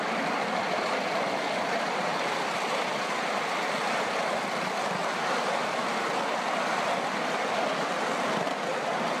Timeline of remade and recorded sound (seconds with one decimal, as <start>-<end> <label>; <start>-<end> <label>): 0.0-9.2 recorded